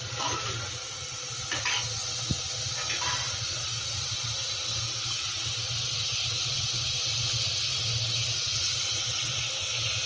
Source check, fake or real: real